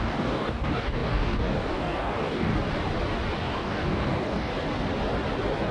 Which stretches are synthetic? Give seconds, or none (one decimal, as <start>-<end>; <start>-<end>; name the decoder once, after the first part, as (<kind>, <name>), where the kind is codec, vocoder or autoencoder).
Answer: 0.0-2.5 (codec, DAC); 3.4-4.5